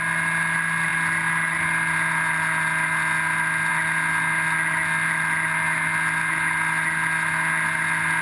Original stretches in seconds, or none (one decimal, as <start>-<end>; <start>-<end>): 0.0-8.2